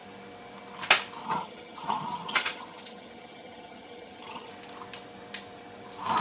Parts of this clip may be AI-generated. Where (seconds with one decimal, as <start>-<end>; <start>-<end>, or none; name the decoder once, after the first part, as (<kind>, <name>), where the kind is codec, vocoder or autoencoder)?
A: 1.2-4.5 (vocoder, HiFi-GAN)

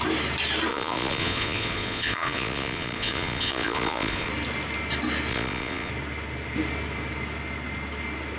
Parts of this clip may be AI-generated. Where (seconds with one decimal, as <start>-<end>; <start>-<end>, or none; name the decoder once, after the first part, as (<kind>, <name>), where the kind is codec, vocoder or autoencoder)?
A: 0.7-4.3 (vocoder, Vocos); 5.3-5.9

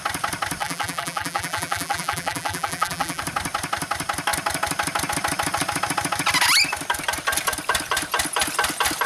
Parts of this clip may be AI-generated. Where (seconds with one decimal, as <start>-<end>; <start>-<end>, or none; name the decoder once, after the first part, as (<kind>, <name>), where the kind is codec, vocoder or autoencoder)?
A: 0.6-3.2 (vocoder, BigVGAN v2)

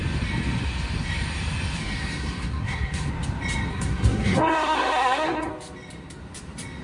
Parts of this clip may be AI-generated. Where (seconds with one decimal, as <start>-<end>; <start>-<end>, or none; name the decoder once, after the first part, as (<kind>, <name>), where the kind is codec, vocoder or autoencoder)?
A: 1.8-3.1 (codec, SNAC); 3.7-5.5

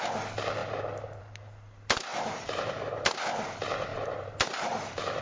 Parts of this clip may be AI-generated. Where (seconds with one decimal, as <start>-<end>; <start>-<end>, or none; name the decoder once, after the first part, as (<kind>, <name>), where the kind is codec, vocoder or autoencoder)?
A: 2.1-3.1 (vocoder, BigVGAN v2); 3.9-5.2